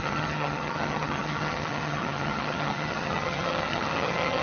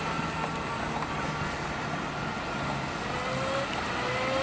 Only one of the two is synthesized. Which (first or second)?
first